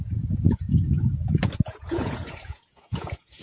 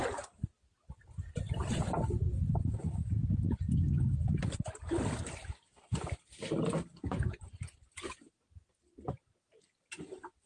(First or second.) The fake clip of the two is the first